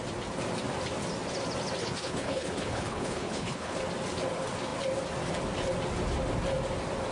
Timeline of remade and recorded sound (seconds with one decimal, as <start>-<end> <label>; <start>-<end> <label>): 0.0-1.8 recorded; 1.8-3.8 remade; 3.8-7.1 recorded